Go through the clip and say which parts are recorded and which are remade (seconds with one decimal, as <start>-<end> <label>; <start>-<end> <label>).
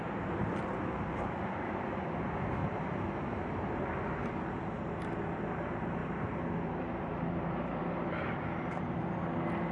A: 0.0-0.4 recorded; 0.4-2.0 remade; 2.0-2.6 recorded; 2.6-4.4 remade; 4.4-6.0 recorded; 6.0-9.0 remade; 9.0-9.7 recorded